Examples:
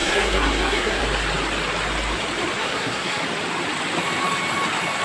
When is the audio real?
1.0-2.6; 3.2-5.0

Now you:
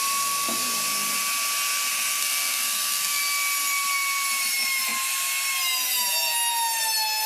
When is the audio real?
0.0-1.9; 3.2-7.3